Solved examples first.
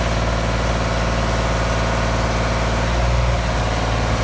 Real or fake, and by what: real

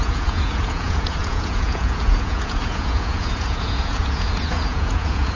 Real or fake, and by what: fake, vocoder, Vocos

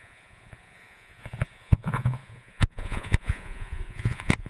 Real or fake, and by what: fake, vocoder, Vocos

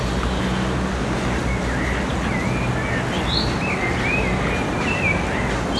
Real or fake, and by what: real